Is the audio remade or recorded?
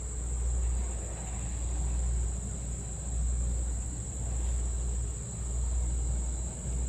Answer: recorded